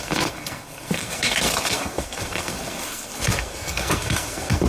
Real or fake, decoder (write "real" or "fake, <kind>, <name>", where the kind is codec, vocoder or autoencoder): fake, codec, SNAC